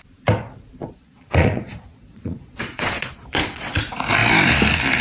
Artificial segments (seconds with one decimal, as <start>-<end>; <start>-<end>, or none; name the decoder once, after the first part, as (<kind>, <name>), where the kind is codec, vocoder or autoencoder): 0.8-3.8 (vocoder, Vocos)